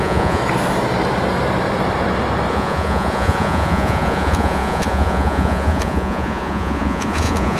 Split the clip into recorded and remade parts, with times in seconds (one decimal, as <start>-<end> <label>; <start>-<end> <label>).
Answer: 0.0-0.4 remade; 0.4-2.5 recorded; 2.5-7.6 remade